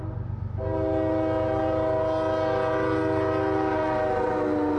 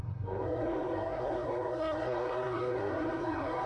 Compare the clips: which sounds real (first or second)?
first